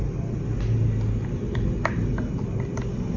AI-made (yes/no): no